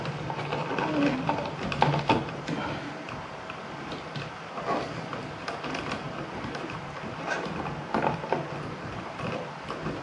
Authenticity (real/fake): real